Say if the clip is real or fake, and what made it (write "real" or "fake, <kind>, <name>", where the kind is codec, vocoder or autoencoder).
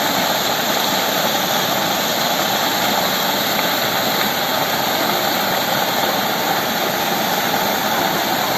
real